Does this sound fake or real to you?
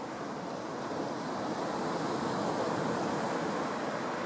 real